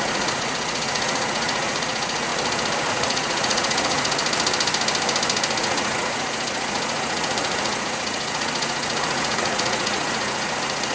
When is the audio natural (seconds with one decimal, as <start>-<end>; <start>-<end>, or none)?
2.3-2.9; 4.2-5.6